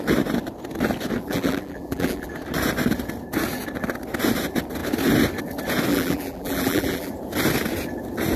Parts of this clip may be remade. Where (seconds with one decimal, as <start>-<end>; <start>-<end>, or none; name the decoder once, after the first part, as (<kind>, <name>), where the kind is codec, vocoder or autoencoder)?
1.2-2.3 (vocoder, BigVGAN v2); 5.9-7.1